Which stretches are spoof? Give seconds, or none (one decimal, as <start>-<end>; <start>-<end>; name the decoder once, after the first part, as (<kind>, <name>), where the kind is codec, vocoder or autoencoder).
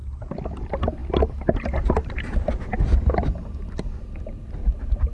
none